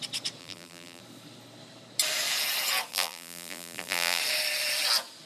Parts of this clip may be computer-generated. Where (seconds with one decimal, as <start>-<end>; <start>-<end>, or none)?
0.4-1.0; 2.9-4.2